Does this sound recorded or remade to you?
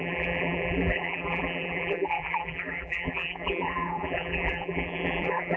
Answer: remade